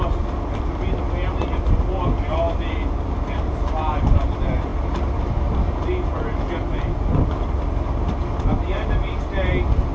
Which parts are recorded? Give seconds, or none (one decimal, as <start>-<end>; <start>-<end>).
0.0-9.9